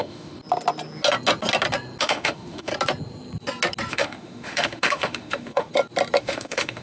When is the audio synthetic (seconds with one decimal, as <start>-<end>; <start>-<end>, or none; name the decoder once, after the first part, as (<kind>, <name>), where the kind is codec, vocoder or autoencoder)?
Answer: 0.0-0.4 (autoencoder, DAC-VAE); 2.0-2.7; 3.9-5.7; 6.2-6.8